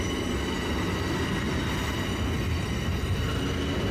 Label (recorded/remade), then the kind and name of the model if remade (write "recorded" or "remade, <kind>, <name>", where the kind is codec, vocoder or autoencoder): recorded